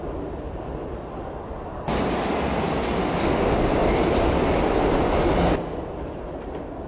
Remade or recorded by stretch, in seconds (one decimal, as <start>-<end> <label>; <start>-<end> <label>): 0.0-6.9 recorded